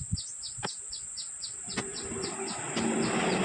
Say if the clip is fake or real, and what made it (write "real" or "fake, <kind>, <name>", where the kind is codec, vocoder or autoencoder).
real